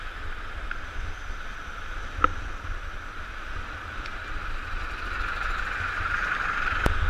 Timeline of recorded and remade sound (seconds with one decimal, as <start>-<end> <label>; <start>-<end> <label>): 0.0-7.1 recorded